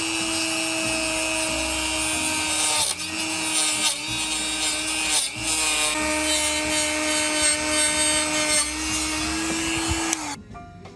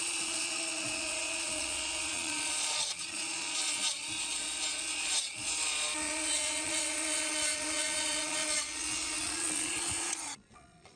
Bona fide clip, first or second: first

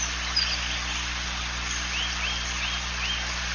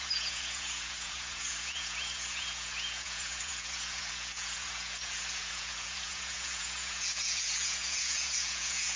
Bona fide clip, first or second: first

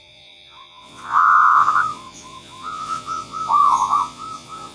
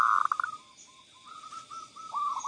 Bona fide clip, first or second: second